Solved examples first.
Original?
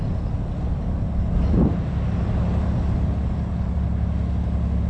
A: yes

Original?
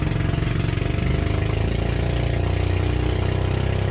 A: yes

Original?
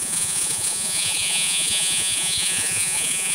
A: no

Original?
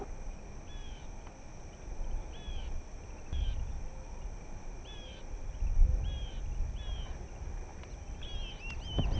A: yes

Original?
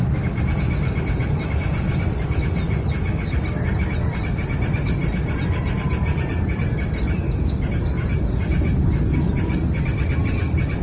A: no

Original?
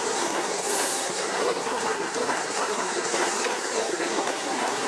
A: no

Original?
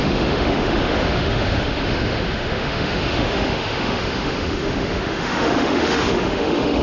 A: no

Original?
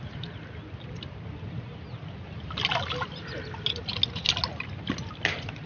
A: yes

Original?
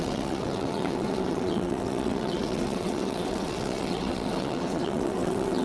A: no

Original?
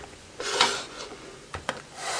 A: no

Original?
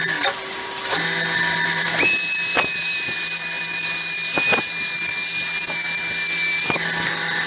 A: yes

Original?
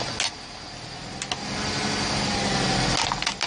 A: yes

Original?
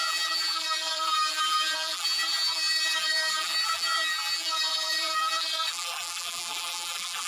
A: no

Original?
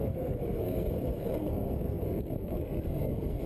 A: no